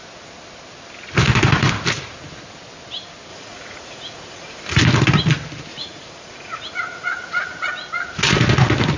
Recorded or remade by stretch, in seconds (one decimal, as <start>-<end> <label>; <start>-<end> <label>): 0.0-3.3 recorded; 3.3-4.8 remade; 4.8-5.7 recorded; 5.7-7.7 remade; 7.7-9.0 recorded